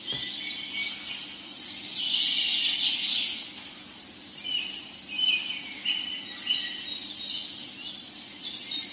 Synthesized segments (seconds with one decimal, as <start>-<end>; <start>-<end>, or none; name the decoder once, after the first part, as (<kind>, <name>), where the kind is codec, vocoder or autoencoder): 1.9-6.2 (vocoder, BigVGAN v2)